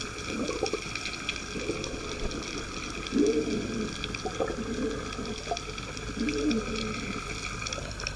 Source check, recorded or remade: recorded